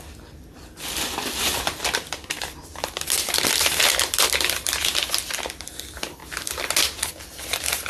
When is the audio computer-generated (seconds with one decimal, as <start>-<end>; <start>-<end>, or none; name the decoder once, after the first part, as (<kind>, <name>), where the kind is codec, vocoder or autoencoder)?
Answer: none